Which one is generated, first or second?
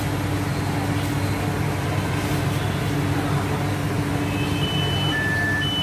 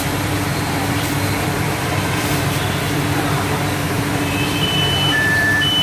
second